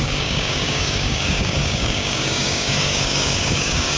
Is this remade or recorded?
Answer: remade